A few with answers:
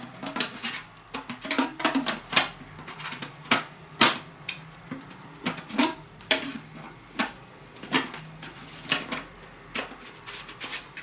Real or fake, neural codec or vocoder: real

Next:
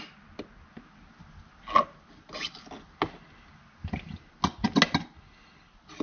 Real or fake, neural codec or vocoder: real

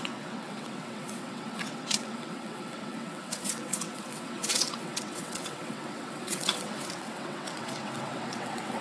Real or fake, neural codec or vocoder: fake, vocoder, WaveNeXt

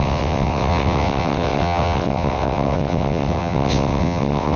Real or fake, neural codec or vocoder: fake, vocoder, WaveNeXt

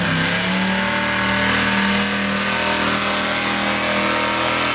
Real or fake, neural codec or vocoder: real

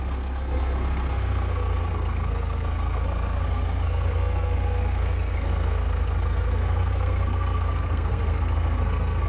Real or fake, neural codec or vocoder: fake, codec, SNAC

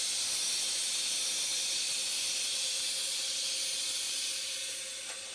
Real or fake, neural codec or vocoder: real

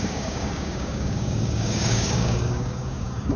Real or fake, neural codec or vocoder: fake, codec, DAC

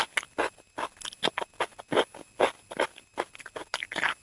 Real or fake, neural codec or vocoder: real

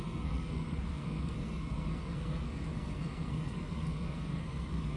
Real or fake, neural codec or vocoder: fake, codec, SNAC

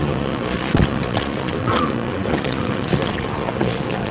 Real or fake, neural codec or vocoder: fake, vocoder, Vocos